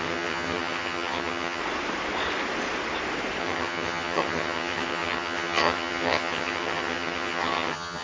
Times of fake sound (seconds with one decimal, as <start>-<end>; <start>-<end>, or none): 0.0-1.6; 3.4-8.0